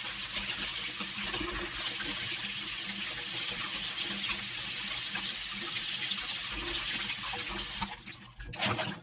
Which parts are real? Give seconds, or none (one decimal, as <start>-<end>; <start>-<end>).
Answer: 0.0-0.7; 1.3-9.0